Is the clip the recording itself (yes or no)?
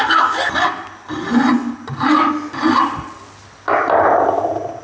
yes